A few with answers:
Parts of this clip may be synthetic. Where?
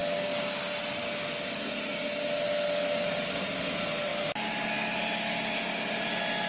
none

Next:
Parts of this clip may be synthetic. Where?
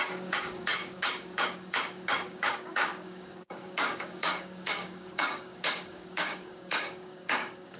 0.0-7.8 (codec, DAC)